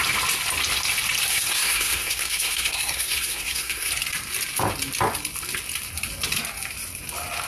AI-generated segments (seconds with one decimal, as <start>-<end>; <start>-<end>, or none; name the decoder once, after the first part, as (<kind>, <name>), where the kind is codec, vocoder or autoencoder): 1.3-3.9 (codec, SNAC)